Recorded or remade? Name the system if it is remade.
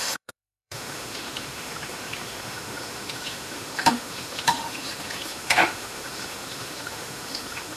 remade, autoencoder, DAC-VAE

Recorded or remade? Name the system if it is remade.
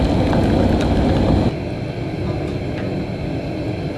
recorded